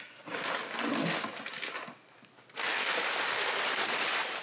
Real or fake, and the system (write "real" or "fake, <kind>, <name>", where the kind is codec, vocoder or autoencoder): real